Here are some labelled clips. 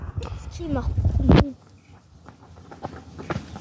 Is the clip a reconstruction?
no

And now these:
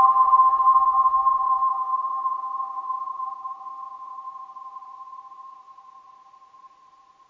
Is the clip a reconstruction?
no